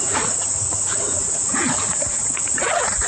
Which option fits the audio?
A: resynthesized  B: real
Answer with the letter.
A